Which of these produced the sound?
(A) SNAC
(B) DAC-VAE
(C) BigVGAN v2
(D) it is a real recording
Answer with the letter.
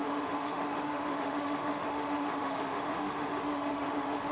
B